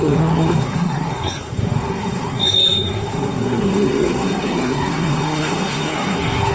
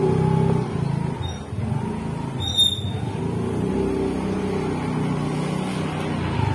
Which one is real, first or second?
second